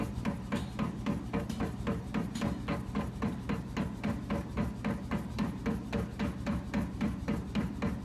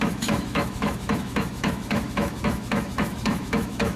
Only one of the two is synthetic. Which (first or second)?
second